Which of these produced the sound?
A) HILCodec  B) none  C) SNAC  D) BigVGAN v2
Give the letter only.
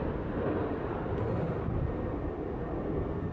B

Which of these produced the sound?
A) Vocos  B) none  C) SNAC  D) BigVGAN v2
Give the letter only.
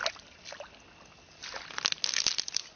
B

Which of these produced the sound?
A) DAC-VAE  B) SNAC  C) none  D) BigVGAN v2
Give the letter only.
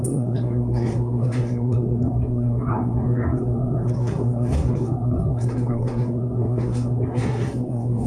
B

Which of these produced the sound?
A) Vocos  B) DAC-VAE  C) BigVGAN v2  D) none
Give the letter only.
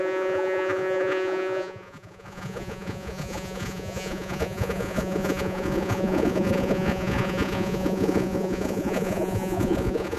A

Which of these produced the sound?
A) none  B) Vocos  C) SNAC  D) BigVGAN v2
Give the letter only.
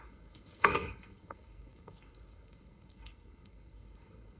C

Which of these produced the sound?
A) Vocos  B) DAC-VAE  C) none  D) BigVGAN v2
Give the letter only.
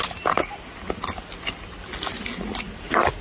C